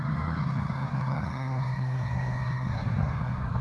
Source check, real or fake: fake